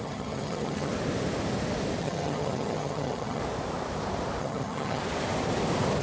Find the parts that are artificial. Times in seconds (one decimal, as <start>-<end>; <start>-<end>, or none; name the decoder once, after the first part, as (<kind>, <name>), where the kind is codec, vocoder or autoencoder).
0.0-0.9 (vocoder, HiFi-GAN); 2.0-3.4; 4.4-5.0